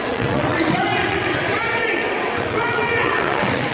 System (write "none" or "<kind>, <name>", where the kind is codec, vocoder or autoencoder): vocoder, WaveNeXt